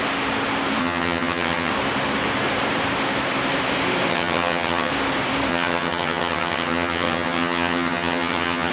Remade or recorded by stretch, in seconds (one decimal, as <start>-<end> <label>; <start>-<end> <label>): 0.0-0.8 recorded; 0.8-1.7 remade; 1.7-4.1 recorded; 4.1-4.9 remade; 4.9-5.5 recorded; 5.5-8.7 remade